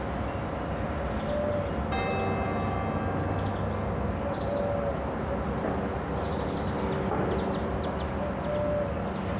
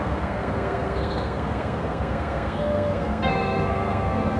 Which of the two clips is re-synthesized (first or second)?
second